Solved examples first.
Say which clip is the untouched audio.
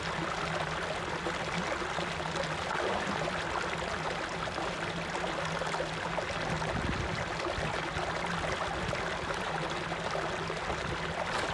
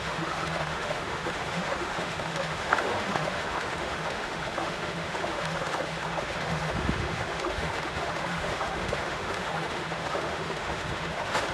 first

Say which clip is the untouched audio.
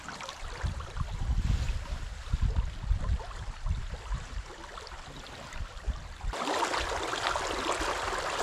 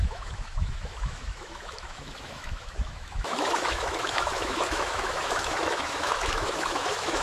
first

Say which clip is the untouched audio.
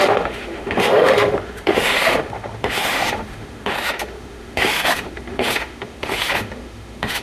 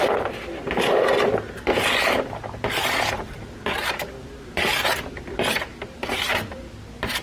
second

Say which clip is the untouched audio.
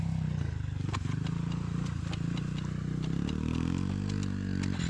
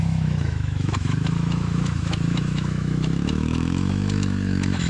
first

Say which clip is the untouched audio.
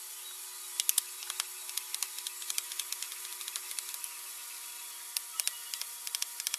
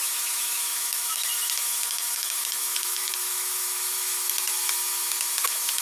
first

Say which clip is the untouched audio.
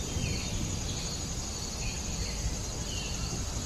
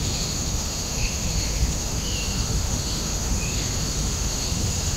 first